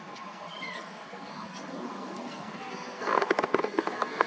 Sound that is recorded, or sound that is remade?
remade